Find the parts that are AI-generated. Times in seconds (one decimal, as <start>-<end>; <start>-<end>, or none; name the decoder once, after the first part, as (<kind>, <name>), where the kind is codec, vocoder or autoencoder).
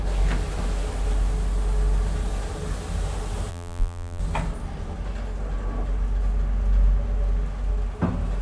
3.5-4.2 (vocoder, BigVGAN v2)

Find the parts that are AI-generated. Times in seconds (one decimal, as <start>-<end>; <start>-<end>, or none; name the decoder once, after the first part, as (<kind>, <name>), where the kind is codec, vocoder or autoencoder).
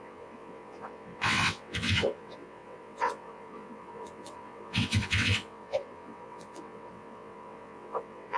0.0-8.4 (vocoder, WaveNeXt)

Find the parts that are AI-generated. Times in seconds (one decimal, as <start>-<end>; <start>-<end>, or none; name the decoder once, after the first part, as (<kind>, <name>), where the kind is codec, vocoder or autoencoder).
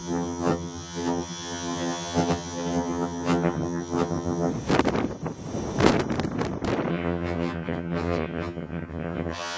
0.0-4.5 (vocoder, HiFi-GAN); 6.9-9.6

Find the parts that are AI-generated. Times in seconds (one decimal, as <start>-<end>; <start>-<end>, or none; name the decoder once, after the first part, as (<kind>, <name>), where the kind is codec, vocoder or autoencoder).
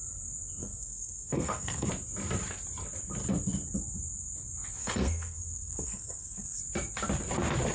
0.6-1.9 (codec, SNAC); 4.8-6.6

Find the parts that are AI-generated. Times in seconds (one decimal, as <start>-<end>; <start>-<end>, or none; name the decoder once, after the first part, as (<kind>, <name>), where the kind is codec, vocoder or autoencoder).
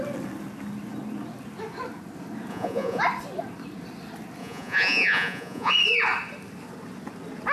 2.5-3.0 (vocoder, Vocos); 4.4-5.7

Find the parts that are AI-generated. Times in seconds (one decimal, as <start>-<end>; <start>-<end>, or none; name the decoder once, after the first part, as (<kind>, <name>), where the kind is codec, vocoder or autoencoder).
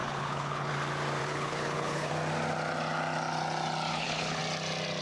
0.0-0.7 (codec, HILCodec); 1.2-2.1; 3.9-4.4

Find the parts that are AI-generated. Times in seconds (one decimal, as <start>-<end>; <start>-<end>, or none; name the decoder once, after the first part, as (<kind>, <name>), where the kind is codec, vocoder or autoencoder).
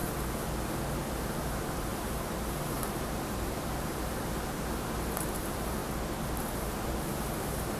1.1-5.8 (vocoder, BigVGAN v2); 6.4-7.8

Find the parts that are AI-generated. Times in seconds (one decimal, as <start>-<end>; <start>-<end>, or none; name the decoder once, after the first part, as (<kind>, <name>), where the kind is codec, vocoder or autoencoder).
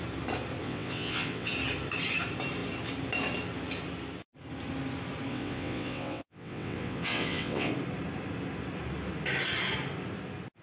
0.6-1.5 (vocoder, WaveNeXt); 5.3-7.7